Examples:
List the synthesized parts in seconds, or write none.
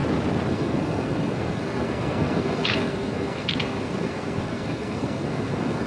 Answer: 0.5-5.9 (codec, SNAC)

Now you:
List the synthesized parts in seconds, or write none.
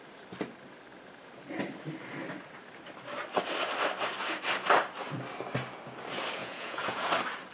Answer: 6.4-7.1 (vocoder, Vocos)